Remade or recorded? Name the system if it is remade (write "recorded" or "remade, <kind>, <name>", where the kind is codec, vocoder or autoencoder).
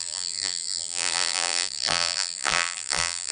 remade, vocoder, BigVGAN v2